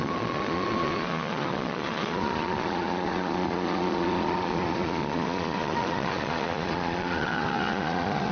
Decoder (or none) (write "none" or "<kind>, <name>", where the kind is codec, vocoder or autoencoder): vocoder, Vocos